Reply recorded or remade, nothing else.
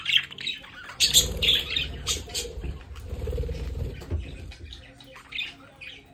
recorded